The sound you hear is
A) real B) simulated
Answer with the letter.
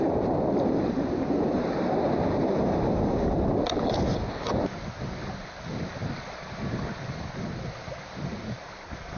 A